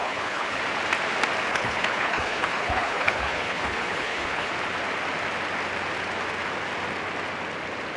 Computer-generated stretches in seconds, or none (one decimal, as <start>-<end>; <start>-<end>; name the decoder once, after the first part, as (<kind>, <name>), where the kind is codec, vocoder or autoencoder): 0.0-0.6 (codec, HILCodec); 1.5-4.5